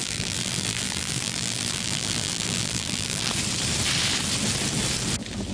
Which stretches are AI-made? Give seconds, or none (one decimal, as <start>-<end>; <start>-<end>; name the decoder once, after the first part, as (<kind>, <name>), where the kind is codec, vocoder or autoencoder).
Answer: 0.0-3.3 (vocoder, BigVGAN v2)